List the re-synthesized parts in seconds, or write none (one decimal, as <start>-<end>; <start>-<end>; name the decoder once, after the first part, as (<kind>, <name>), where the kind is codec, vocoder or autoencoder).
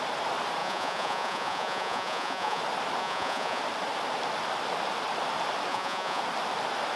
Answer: 0.6-2.6 (vocoder, Vocos); 3.0-3.6; 5.7-6.2